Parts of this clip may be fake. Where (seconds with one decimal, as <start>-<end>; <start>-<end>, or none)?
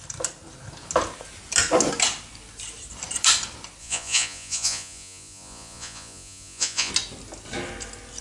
3.8-6.9